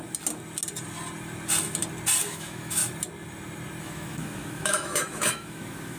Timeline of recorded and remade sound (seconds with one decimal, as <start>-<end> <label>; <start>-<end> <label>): 0.0-2.2 recorded; 2.2-2.8 remade; 2.8-3.8 recorded; 3.8-6.0 remade